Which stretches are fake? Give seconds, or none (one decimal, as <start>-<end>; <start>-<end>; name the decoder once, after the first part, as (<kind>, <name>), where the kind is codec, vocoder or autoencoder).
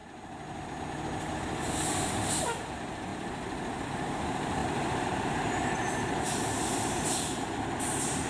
2.6-3.1 (vocoder, BigVGAN v2); 3.8-8.3